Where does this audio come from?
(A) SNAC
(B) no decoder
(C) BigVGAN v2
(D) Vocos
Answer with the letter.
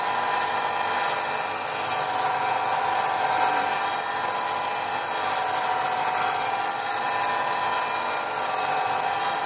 B